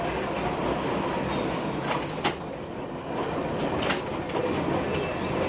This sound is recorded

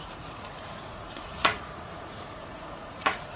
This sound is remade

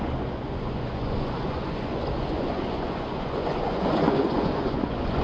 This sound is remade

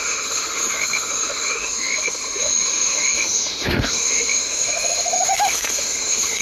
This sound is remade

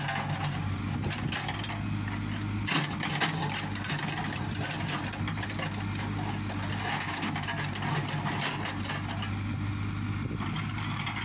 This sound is recorded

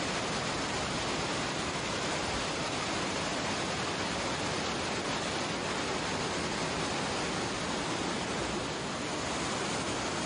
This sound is recorded